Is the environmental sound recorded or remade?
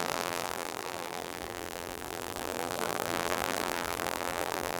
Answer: remade